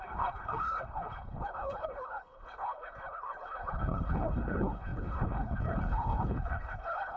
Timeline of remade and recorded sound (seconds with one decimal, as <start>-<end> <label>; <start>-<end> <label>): 0.0-7.2 remade